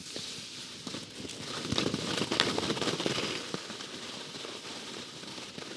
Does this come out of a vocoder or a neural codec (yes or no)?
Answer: no